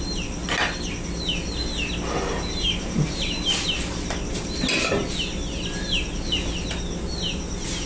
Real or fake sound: real